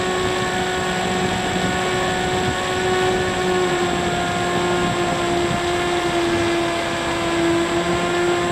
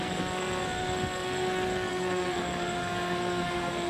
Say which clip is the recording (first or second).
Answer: first